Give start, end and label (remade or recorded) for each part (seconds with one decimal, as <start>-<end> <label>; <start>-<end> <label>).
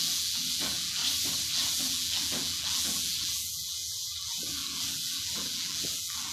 0.0-1.0 remade; 1.0-1.5 recorded; 1.5-6.3 remade